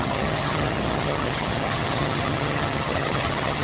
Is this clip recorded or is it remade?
remade